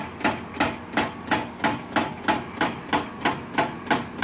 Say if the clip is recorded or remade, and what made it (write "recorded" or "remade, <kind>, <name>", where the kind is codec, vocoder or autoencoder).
recorded